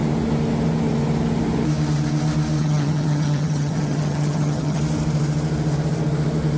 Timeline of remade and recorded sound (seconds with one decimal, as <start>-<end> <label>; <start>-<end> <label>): 0.0-2.6 recorded; 2.6-4.8 remade; 4.8-6.6 recorded